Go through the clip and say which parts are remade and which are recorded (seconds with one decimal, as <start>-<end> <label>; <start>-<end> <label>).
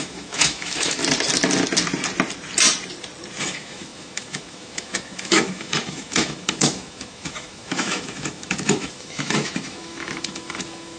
0.0-1.0 remade; 1.0-3.4 recorded; 3.4-11.0 remade